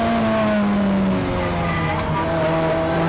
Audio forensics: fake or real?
real